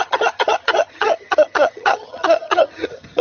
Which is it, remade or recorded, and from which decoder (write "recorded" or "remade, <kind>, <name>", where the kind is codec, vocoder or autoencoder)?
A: remade, vocoder, HiFi-GAN